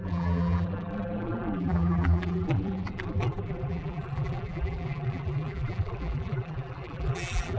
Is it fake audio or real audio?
fake